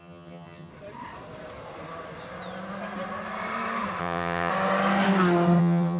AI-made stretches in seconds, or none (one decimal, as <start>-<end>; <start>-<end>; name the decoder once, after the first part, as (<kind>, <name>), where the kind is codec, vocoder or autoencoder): 0.0-0.7 (vocoder, HiFi-GAN); 4.0-4.5; 5.6-6.0